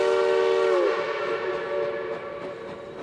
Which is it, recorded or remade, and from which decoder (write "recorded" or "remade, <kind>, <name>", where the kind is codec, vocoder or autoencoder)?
recorded